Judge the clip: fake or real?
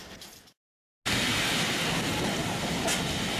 real